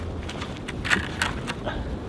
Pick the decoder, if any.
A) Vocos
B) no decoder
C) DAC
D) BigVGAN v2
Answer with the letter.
B